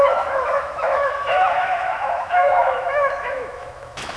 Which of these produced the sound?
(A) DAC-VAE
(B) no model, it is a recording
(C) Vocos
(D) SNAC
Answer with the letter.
A